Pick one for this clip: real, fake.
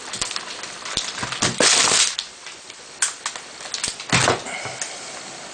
real